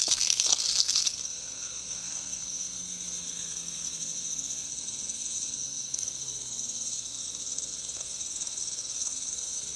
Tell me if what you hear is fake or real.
fake